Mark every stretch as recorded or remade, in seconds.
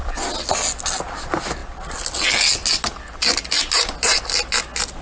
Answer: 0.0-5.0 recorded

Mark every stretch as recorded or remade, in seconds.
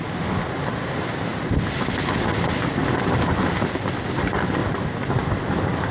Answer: 0.0-5.9 recorded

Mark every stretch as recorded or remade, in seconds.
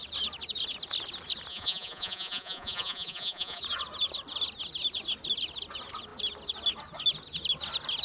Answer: 0.0-1.5 recorded; 1.5-3.6 remade; 3.6-8.0 recorded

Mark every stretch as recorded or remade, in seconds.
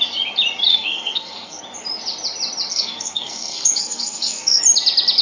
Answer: 0.0-0.7 recorded; 0.7-1.6 remade; 1.6-2.7 recorded; 2.7-4.6 remade; 4.6-5.2 recorded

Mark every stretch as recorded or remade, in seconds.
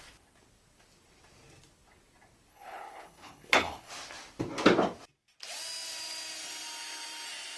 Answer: 0.0-2.5 recorded; 2.5-3.9 remade; 3.9-7.6 recorded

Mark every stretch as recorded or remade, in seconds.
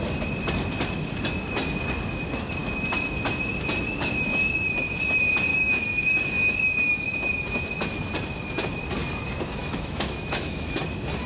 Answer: 0.0-5.5 recorded; 5.5-6.5 remade; 6.5-9.6 recorded; 9.6-10.8 remade; 10.8-11.3 recorded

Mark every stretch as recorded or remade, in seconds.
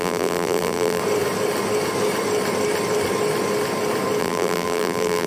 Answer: 0.0-1.0 remade; 1.0-4.2 recorded; 4.2-5.3 remade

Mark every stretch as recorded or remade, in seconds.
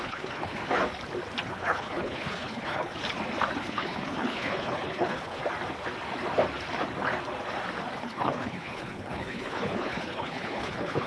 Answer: 0.0-0.6 remade; 0.6-1.5 recorded; 1.5-2.9 remade; 2.9-3.6 recorded; 3.6-5.4 remade; 5.4-8.0 recorded; 8.0-11.1 remade